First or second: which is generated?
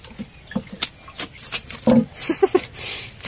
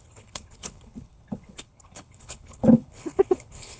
second